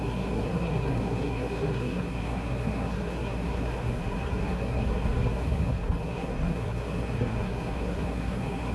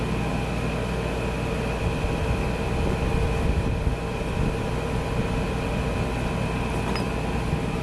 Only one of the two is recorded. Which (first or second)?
second